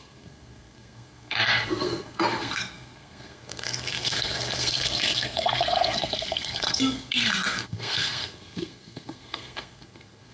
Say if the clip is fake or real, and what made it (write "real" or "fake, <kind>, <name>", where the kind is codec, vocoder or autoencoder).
fake, codec, SNAC